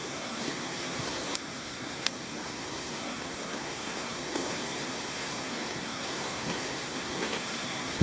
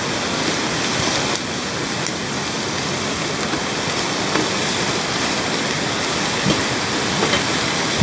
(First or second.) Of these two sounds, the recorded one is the second